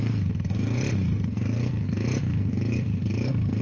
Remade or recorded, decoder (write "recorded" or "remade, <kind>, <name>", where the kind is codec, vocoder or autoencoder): remade, codec, SNAC